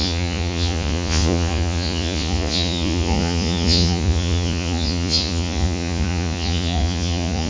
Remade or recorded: remade